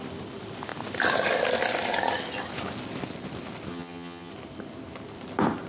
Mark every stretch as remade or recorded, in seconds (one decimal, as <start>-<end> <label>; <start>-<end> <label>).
0.0-3.7 recorded; 3.7-4.3 remade; 4.3-5.7 recorded